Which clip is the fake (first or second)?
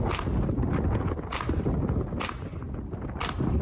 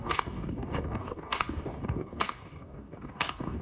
second